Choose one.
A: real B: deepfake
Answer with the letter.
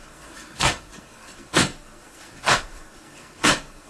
B